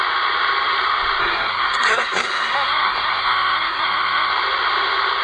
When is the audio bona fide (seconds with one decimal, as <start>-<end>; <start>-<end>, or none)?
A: 0.0-1.2; 4.3-5.2